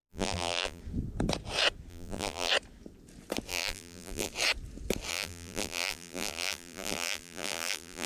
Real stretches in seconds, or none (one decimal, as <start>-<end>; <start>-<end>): 0.8-1.9; 2.5-3.5; 4.3-5.1